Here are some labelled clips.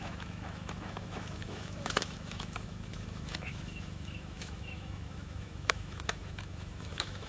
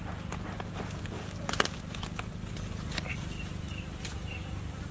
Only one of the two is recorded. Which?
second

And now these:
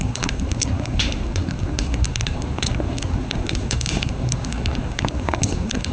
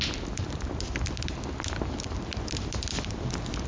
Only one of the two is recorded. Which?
second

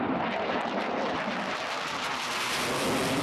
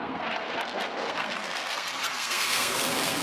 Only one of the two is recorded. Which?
first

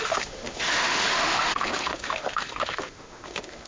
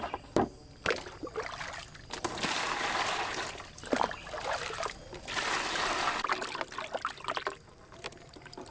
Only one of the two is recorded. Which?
second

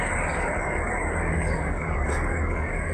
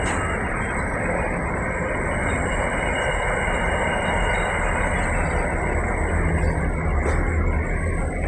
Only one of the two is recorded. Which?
second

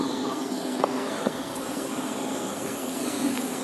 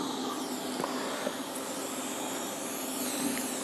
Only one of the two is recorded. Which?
second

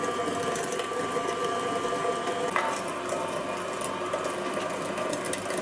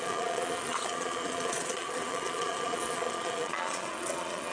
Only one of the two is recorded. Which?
first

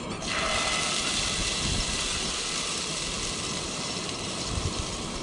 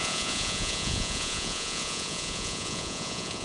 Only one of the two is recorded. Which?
first